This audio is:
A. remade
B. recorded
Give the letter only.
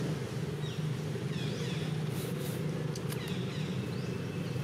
B